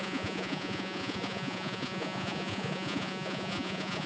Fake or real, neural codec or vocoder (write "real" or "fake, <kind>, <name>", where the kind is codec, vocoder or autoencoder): fake, vocoder, Vocos